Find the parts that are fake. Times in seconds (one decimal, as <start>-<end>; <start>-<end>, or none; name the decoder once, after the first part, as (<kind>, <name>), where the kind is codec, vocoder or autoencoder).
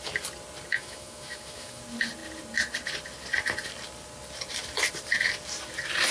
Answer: 0.7-1.8 (autoencoder, DAC-VAE)